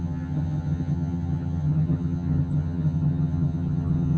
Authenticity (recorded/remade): remade